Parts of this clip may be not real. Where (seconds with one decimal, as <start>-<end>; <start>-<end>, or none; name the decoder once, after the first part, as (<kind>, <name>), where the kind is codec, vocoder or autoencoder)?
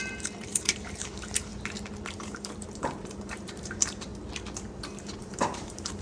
0.0-1.5 (vocoder, BigVGAN v2); 2.2-4.1; 5.2-6.0